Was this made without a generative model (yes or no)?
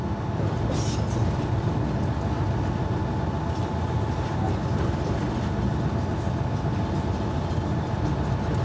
yes